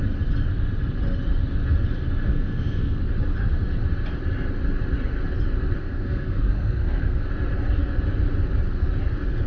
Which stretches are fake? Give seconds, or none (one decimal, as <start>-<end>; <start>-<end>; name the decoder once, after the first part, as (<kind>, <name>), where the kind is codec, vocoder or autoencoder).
2.3-3.0 (codec, SNAC); 5.8-7.3